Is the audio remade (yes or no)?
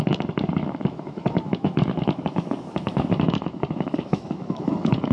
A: yes